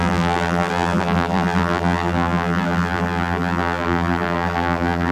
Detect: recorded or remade remade